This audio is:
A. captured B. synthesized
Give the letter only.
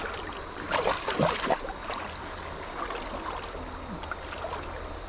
A